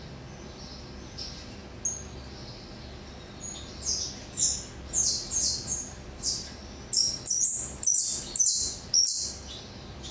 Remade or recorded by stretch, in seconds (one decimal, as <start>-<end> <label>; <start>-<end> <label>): 0.0-10.1 recorded